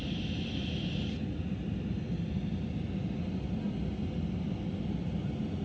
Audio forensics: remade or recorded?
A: recorded